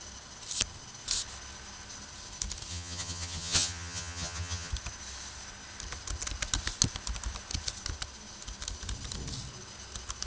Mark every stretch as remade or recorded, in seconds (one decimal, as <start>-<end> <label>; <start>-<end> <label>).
0.0-2.7 recorded; 2.7-4.7 remade; 4.7-10.3 recorded